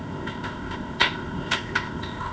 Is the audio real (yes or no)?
no